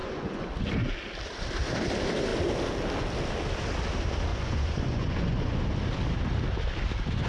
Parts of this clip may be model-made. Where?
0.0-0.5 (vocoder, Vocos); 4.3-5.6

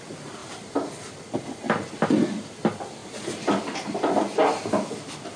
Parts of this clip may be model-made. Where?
none

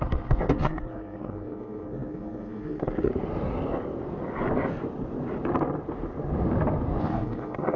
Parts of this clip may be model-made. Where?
0.0-3.1 (codec, SNAC); 7.0-7.8

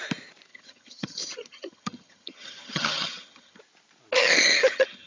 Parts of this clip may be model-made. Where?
0.5-3.6 (vocoder, HiFi-GAN); 4.2-5.1